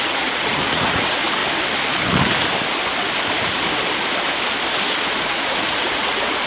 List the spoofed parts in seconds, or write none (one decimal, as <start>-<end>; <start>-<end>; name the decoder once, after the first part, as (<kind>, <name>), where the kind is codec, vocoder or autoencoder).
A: 0.0-1.4 (vocoder, Vocos); 5.3-6.5